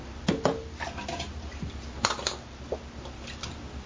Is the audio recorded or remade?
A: remade